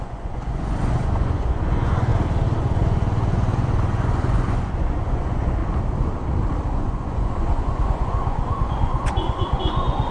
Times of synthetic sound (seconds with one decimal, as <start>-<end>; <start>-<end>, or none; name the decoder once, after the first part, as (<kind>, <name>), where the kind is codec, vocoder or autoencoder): 0.0-2.1 (vocoder, Vocos); 2.6-5.6; 6.7-10.1